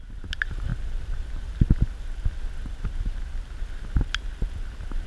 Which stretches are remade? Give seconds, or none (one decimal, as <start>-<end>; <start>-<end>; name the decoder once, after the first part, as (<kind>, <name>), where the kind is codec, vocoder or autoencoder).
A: none

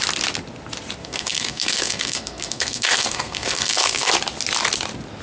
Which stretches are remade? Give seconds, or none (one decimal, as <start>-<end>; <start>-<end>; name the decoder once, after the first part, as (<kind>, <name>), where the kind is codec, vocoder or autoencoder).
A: 1.0-4.1 (codec, SNAC)

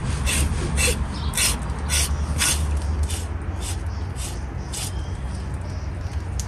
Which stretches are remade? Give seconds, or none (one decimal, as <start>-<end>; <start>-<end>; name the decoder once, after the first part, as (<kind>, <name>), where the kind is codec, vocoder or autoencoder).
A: none

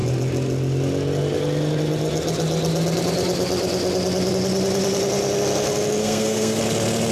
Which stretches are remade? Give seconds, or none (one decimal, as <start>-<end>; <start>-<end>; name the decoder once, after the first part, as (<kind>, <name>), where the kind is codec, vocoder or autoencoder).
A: 6.0-6.6 (codec, SNAC)

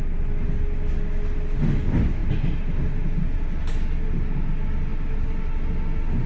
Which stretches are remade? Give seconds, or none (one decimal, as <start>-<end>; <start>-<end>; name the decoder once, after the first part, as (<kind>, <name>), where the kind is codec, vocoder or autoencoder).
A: none

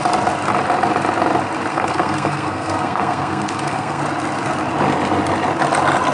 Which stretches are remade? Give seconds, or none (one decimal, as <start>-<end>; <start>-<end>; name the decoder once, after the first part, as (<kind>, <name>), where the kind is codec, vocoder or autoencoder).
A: 1.7-4.0 (codec, SNAC)